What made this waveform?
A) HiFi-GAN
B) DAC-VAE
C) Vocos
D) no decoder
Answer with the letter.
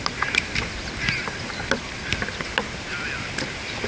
D